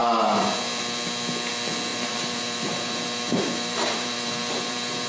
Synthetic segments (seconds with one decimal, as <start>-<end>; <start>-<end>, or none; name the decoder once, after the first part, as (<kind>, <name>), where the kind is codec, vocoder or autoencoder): 1.9-5.1 (vocoder, BigVGAN v2)